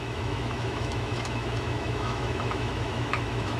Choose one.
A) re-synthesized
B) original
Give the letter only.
A